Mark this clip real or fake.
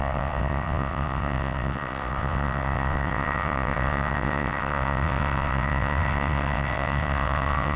fake